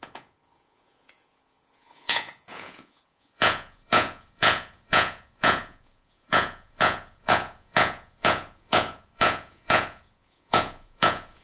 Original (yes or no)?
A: no